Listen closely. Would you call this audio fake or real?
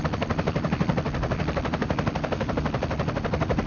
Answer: fake